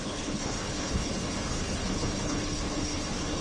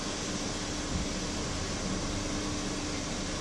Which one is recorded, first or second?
second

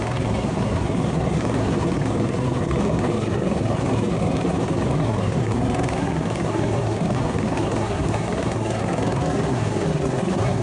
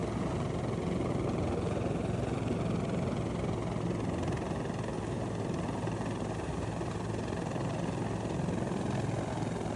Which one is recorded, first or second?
second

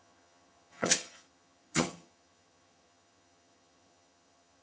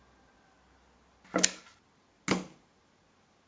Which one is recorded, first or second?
second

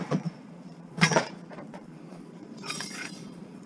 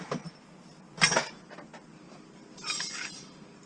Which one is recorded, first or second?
second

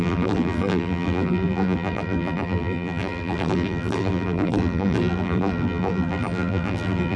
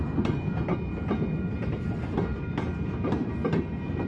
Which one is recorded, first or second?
second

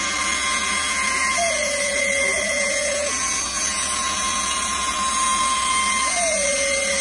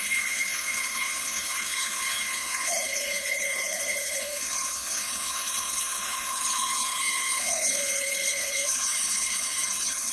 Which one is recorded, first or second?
first